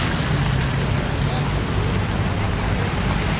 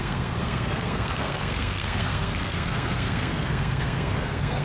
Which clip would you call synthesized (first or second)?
second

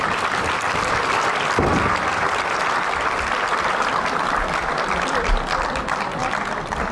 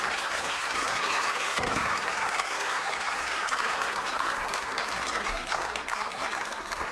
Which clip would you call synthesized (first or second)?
second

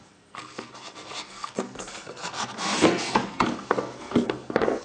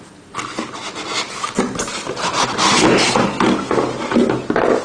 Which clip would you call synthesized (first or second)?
first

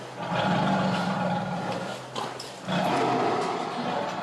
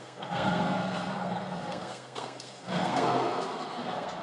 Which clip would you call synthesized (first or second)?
second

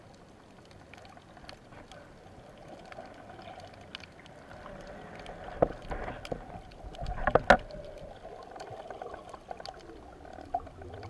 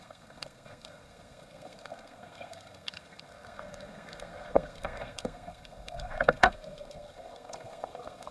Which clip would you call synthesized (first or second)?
second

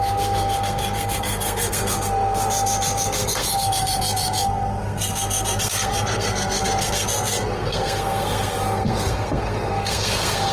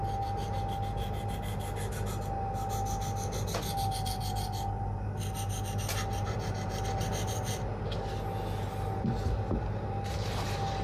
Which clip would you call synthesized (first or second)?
first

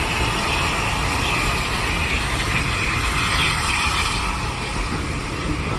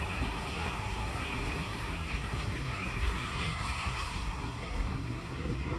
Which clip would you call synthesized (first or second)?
second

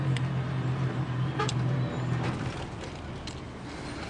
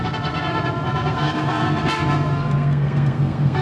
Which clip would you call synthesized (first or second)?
second